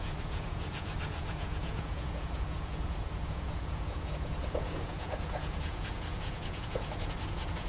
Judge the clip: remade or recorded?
remade